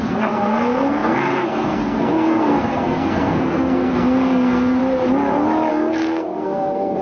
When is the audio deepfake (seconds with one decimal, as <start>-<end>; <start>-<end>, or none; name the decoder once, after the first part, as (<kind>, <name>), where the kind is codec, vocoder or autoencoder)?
0.0-4.8 (codec, SNAC); 5.7-7.0